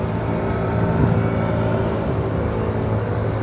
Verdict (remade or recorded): recorded